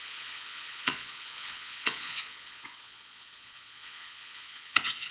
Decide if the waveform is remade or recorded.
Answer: remade